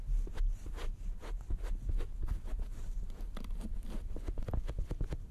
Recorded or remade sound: recorded